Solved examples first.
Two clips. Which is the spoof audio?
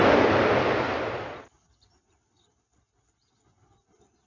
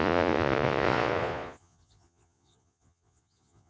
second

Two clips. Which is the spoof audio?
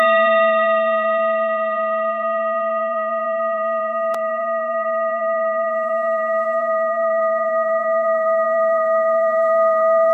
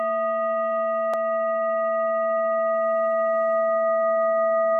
first